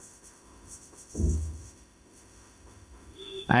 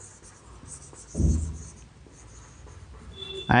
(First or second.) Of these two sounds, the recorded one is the second